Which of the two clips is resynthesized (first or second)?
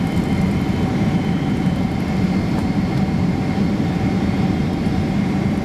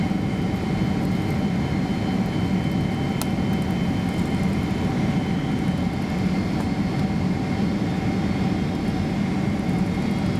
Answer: first